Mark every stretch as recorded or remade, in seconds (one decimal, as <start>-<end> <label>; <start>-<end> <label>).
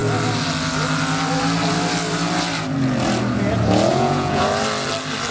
0.0-3.9 recorded; 3.9-4.4 remade; 4.4-5.3 recorded